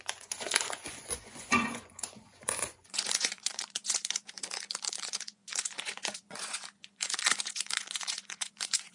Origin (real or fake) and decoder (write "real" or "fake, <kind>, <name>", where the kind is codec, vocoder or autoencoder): fake, vocoder, Vocos